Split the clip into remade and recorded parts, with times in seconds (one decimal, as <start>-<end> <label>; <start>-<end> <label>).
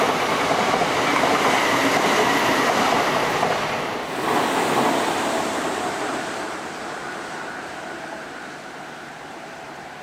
0.0-1.8 remade; 1.8-5.8 recorded; 5.8-10.0 remade